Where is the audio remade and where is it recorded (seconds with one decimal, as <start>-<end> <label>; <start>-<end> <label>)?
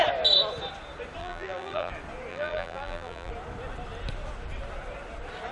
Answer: 0.0-1.2 recorded; 1.2-1.9 remade; 1.9-2.3 recorded; 2.3-3.3 remade; 3.3-5.5 recorded